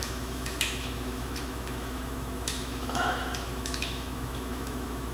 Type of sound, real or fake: fake